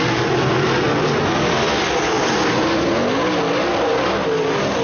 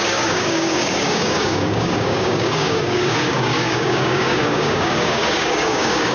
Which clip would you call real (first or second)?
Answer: first